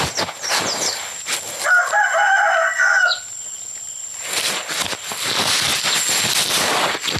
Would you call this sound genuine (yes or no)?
yes